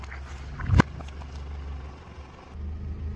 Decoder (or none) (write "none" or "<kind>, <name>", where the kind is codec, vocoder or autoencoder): none